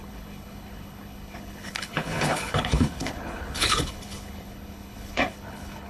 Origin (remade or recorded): remade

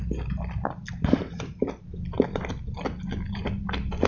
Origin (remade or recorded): recorded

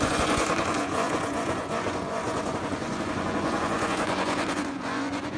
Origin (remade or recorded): remade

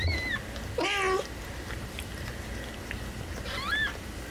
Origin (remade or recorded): recorded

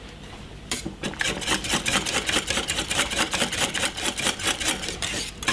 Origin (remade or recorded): remade